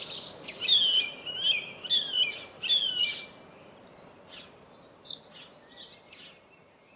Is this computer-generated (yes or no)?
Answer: no